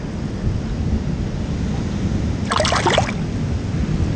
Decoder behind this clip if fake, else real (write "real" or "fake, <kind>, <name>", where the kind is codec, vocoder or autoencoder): real